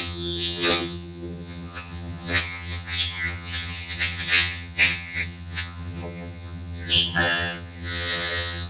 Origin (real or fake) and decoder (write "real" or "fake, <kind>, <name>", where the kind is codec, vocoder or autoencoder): fake, vocoder, HiFi-GAN